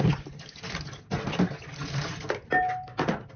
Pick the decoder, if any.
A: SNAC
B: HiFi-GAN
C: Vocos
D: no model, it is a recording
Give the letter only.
D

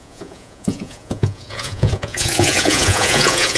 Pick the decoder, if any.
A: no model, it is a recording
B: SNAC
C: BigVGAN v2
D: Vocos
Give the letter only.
D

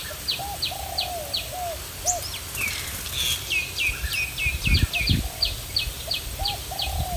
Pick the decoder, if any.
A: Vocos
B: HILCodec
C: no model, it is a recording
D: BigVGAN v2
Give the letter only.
C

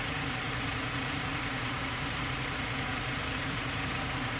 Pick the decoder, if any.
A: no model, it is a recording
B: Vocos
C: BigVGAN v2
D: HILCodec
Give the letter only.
B